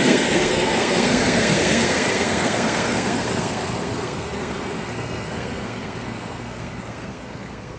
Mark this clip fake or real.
fake